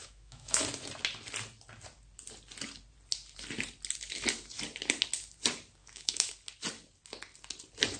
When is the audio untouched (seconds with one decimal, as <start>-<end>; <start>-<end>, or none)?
0.6-5.8; 6.3-8.0